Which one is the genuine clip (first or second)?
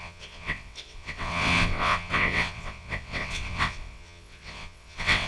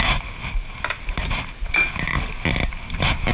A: second